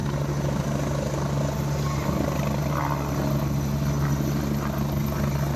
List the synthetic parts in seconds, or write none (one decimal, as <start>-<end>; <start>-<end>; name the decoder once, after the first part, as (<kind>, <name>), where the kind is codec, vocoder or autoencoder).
none